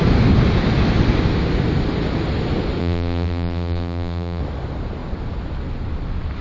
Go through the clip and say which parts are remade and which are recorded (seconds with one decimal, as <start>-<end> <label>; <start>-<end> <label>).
0.0-2.8 recorded; 2.8-4.4 remade; 4.4-6.4 recorded